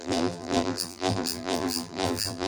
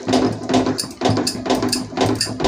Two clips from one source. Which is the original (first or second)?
second